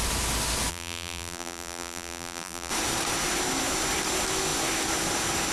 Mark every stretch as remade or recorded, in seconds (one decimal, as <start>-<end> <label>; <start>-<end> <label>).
0.0-0.7 recorded; 0.7-2.7 remade; 2.7-5.5 recorded